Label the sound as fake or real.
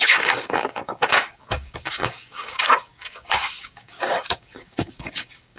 fake